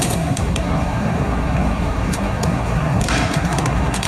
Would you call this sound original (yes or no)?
no